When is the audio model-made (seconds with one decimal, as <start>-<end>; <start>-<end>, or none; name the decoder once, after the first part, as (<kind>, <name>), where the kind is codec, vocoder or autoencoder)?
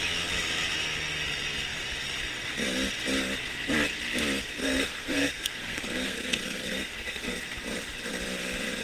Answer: 4.6-7.4 (codec, SNAC)